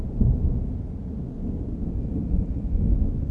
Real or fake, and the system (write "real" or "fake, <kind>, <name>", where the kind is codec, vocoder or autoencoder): real